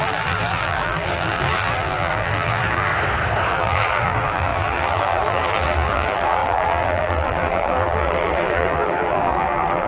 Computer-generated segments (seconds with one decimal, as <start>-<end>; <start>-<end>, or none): 0.0-2.9; 3.5-9.9